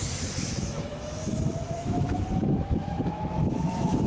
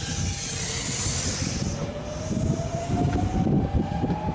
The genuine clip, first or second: second